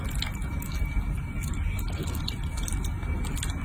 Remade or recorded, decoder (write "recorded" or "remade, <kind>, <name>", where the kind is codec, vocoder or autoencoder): recorded